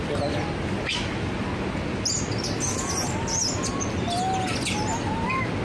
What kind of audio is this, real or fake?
real